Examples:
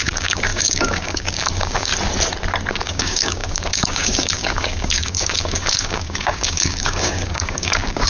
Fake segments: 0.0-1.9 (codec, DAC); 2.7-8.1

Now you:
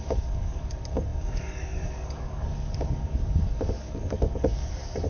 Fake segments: 0.0-5.1 (codec, DAC)